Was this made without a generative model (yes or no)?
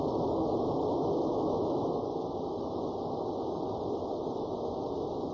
yes